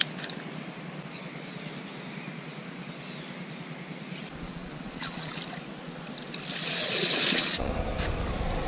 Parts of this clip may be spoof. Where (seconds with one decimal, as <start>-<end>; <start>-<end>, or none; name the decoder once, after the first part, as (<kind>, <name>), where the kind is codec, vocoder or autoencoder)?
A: 4.5-5.3 (vocoder, Vocos); 6.6-7.7